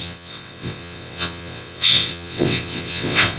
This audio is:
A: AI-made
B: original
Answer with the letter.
A